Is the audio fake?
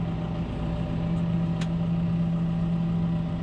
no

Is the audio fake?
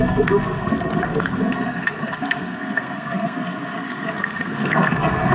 yes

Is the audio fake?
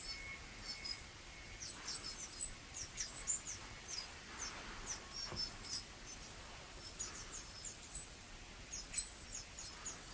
no